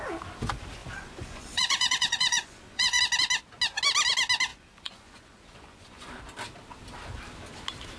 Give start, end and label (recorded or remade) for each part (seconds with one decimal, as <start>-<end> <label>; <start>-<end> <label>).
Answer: 0.0-0.8 recorded; 0.8-3.0 remade; 3.0-4.5 recorded; 4.5-6.1 remade; 6.1-8.0 recorded